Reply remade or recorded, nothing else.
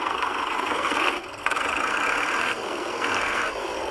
remade